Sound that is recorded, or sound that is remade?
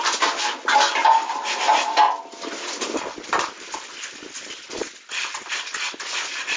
recorded